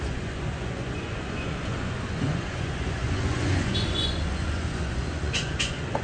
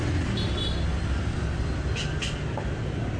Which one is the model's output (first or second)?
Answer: first